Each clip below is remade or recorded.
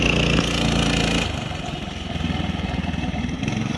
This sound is recorded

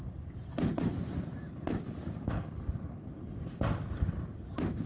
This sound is recorded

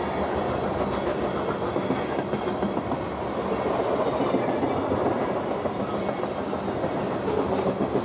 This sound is recorded